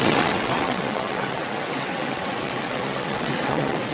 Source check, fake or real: fake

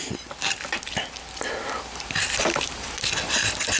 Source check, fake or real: real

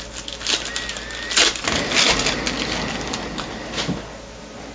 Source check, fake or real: real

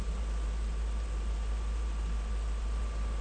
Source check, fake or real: real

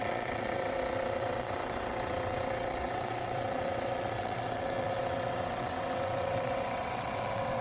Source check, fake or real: fake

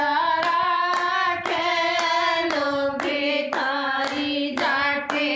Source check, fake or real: real